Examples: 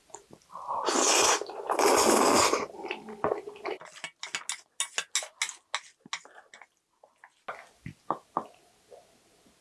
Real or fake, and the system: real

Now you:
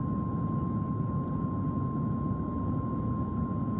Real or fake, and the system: real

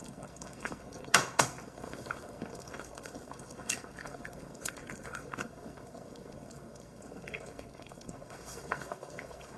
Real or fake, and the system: fake, codec, SNAC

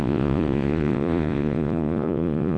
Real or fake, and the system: fake, vocoder, Vocos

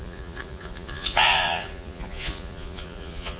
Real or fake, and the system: fake, vocoder, Vocos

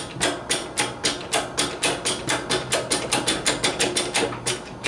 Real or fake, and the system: real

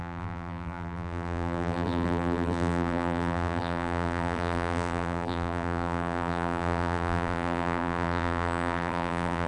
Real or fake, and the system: fake, vocoder, BigVGAN v2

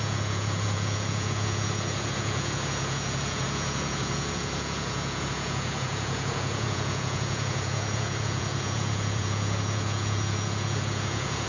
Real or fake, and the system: fake, vocoder, Vocos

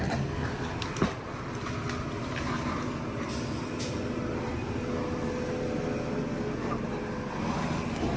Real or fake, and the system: real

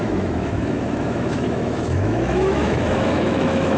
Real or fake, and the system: fake, autoencoder, DAC-VAE